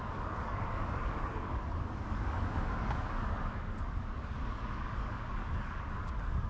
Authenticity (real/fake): fake